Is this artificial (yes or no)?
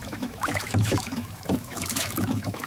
yes